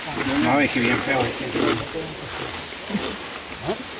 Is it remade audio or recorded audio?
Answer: recorded